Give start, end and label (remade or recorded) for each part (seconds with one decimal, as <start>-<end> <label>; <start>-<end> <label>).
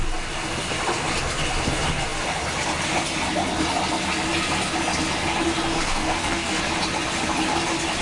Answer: 0.0-5.7 recorded; 5.7-6.6 remade; 6.6-8.0 recorded